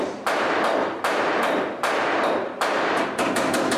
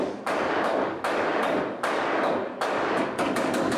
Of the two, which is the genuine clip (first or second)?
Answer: first